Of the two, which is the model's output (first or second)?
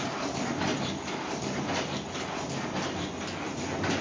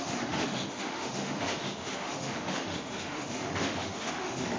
second